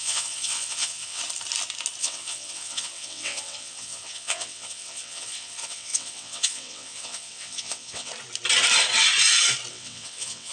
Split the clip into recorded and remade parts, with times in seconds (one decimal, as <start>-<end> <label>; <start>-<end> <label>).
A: 0.0-1.2 remade; 1.2-2.0 recorded; 2.0-8.1 remade; 8.1-9.7 recorded; 9.7-10.5 remade